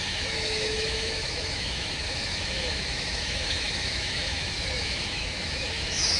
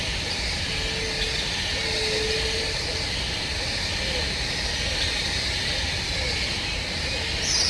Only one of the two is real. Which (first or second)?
second